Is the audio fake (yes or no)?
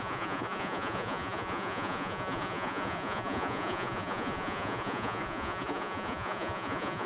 yes